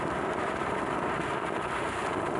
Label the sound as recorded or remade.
recorded